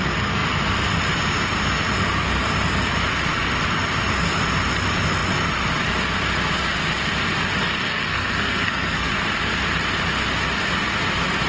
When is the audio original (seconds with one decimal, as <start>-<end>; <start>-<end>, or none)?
0.0-7.6; 9.1-11.5